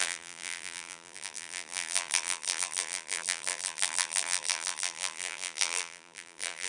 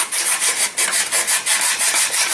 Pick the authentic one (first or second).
second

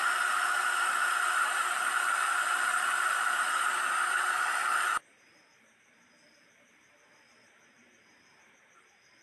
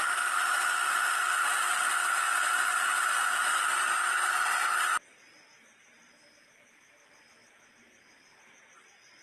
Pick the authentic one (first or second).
second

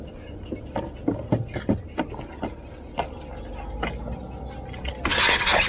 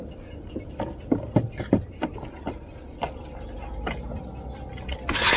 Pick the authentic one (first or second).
first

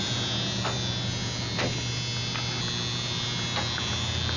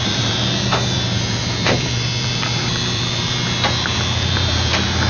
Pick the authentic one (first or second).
first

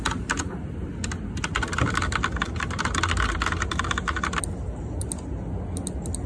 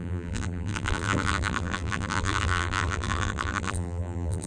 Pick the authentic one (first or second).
first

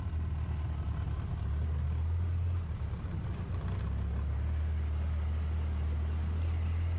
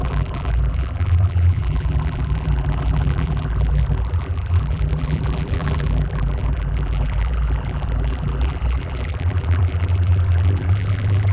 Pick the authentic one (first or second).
first